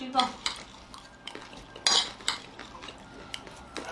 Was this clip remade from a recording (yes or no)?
no